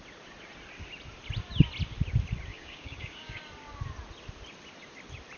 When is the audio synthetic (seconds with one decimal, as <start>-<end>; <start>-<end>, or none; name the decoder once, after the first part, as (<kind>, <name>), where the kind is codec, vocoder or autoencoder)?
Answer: 2.5-3.4 (codec, DAC)